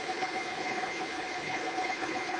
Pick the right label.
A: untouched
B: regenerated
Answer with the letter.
B